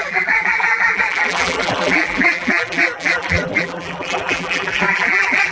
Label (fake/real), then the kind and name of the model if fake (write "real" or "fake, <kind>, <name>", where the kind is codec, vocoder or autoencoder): fake, vocoder, BigVGAN v2